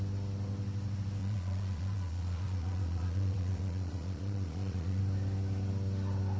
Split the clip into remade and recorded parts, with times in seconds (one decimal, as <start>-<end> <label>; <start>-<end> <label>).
0.0-1.2 recorded; 1.2-5.0 remade; 5.0-6.4 recorded